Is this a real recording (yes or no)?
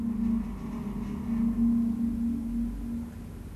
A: yes